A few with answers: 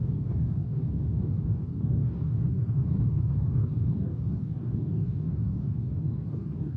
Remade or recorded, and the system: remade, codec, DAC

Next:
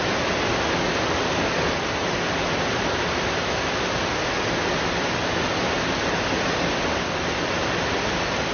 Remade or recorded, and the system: recorded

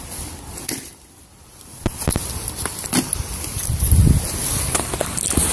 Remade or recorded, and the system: recorded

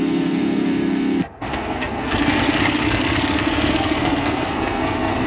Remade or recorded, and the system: remade, codec, SNAC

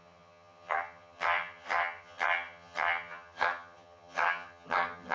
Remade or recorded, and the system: remade, vocoder, HiFi-GAN